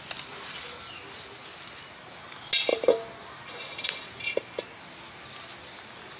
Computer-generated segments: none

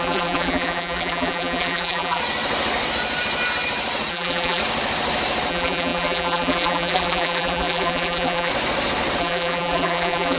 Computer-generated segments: 0.0-2.2; 4.1-4.6; 5.5-8.5; 9.2-10.4